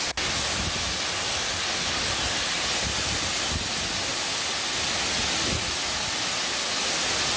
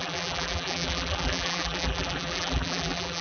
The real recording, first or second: first